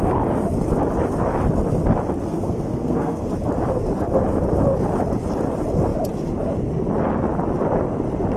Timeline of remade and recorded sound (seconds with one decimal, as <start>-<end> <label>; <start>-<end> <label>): 0.0-2.3 recorded; 2.3-3.3 remade; 3.3-8.4 recorded